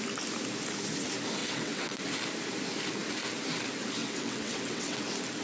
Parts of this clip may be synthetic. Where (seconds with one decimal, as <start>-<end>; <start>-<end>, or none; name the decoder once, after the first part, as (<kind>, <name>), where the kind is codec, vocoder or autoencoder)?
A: 1.4-2.0 (vocoder, WaveNeXt); 4.0-5.0